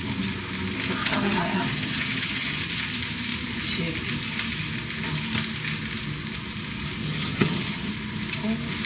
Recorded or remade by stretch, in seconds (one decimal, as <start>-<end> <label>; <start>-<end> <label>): 0.0-1.0 recorded; 1.0-2.6 remade; 2.6-7.0 recorded; 7.0-7.9 remade; 7.9-8.9 recorded